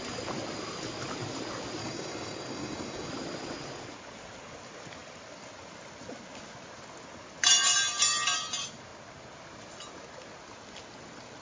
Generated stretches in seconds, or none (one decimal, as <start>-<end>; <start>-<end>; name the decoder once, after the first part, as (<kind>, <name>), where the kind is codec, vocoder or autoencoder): 1.8-3.1 (codec, DAC)